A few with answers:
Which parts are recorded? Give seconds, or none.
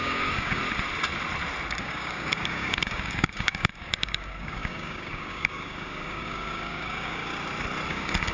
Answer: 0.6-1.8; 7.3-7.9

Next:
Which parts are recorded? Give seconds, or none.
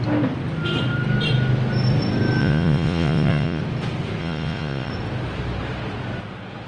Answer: 0.0-2.4; 3.6-4.2; 4.9-6.7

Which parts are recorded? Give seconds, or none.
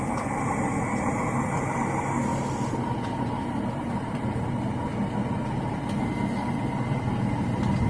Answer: 0.0-7.9